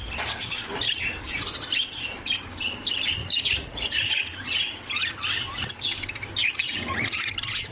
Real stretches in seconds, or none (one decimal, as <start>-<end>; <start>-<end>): 0.0-3.2; 4.1-6.4; 7.3-7.7